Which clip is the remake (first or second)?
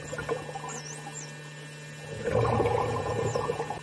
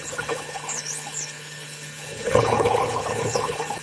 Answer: second